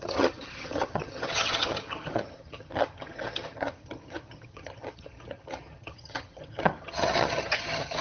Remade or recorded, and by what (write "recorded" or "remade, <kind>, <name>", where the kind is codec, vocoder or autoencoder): remade, vocoder, HiFi-GAN